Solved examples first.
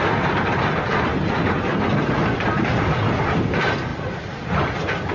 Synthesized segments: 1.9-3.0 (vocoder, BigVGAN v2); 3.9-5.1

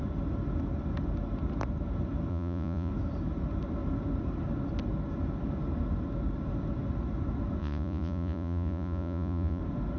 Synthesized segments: 2.3-2.9 (vocoder, Vocos); 7.6-9.6

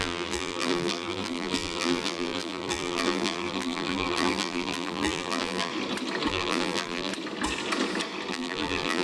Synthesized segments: 0.0-5.7 (vocoder, BigVGAN v2); 6.3-7.1; 8.3-9.0

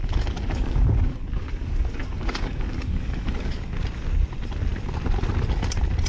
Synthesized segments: 0.0-3.7 (codec, DAC)